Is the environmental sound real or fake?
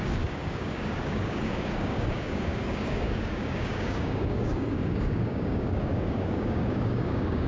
fake